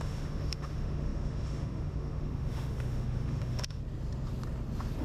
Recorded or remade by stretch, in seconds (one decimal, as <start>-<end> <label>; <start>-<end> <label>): 0.0-3.8 remade; 3.8-5.0 recorded